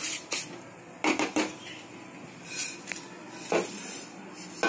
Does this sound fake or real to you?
real